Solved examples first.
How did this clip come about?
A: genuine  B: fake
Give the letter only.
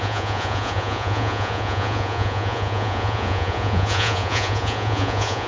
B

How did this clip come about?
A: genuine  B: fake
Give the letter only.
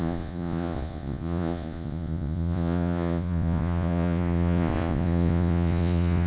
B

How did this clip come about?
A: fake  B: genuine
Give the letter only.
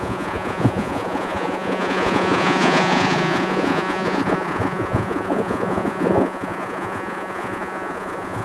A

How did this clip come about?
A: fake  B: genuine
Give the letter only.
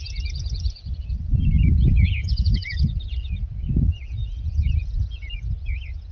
A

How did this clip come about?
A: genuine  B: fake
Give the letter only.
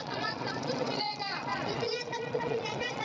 B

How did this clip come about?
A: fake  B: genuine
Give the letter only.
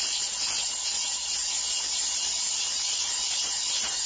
B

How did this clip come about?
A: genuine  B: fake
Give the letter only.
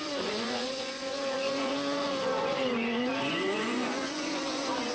B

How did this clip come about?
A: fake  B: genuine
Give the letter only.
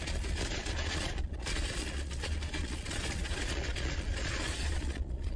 A